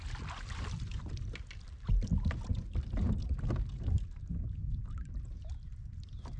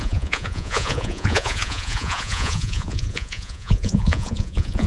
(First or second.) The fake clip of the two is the second